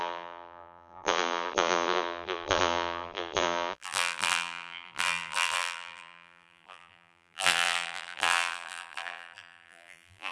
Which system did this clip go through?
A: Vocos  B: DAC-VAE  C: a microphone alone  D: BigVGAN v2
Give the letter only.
D